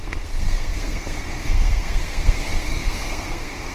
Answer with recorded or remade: remade